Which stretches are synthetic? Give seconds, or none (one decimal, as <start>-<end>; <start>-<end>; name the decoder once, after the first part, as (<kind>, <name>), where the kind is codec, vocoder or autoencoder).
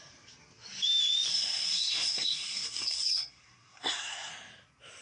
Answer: 1.3-4.3 (codec, SNAC)